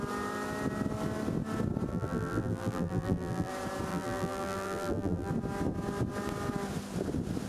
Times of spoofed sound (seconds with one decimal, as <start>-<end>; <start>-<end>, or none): 1.9-3.5; 3.9-5.3